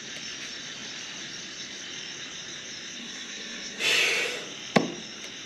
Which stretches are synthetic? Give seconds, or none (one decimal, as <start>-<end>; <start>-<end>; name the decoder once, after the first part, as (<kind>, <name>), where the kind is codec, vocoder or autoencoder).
3.0-3.8 (codec, SNAC)